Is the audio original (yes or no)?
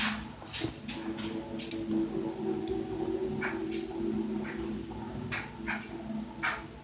yes